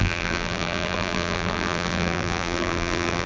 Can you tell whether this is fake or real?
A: fake